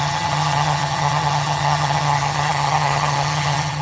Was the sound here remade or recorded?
remade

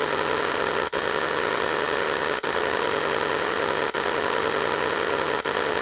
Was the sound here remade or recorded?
remade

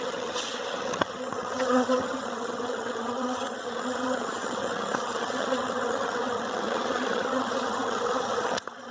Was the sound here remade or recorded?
remade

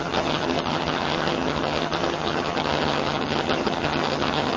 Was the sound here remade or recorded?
remade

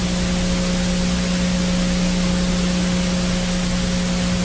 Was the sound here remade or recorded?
recorded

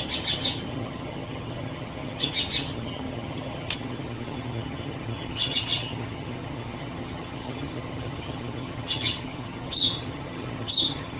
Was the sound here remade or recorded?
remade